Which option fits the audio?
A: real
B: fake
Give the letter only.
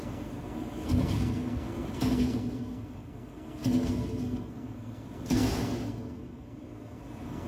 B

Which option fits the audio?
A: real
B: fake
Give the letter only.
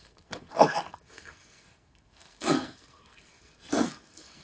B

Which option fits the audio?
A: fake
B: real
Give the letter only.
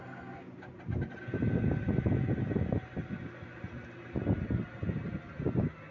B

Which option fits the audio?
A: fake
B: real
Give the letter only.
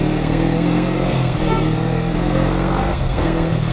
A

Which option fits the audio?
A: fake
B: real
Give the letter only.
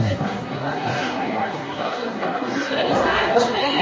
A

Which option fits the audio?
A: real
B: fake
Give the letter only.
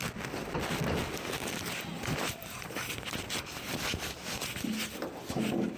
A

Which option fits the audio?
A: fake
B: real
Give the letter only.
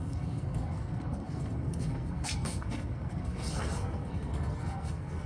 A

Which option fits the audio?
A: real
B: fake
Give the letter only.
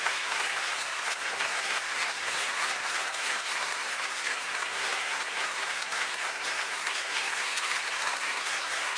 B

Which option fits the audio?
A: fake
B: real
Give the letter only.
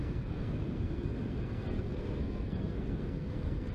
A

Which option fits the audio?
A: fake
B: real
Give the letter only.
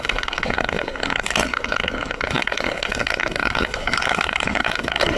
A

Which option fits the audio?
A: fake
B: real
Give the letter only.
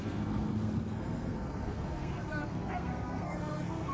A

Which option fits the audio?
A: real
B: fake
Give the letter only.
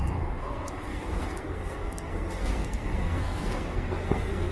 B